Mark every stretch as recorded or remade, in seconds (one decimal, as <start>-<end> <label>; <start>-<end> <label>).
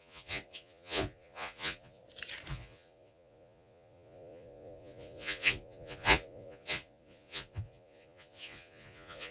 0.0-2.0 remade; 2.0-2.5 recorded; 2.5-9.3 remade